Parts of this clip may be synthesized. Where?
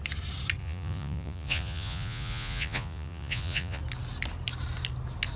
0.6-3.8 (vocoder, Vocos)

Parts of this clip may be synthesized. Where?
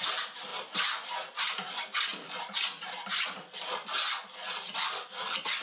none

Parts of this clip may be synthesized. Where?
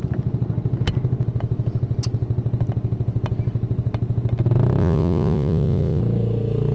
4.8-6.0 (vocoder, Vocos)